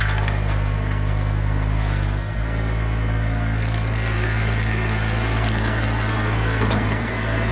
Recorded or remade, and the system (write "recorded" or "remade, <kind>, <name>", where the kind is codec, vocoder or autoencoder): remade, codec, SNAC